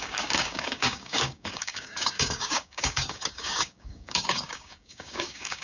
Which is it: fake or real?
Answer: fake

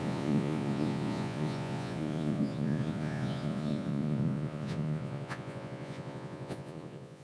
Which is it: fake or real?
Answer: fake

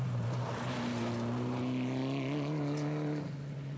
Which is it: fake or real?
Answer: real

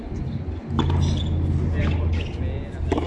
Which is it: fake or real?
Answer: real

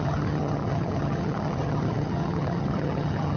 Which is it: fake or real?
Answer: fake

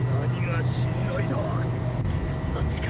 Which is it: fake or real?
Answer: real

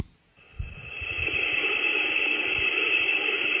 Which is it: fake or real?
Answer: real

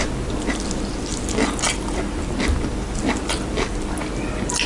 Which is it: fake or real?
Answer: real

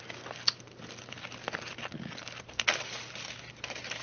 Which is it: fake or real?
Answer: real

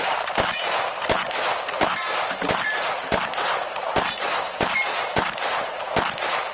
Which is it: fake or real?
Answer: fake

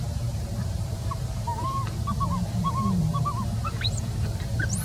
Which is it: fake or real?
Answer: fake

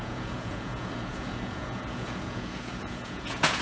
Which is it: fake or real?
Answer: fake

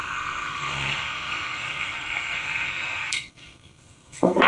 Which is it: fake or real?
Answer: fake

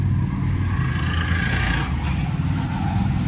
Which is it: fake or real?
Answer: real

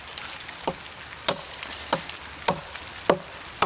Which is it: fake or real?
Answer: real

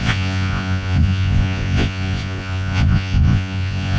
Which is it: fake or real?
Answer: fake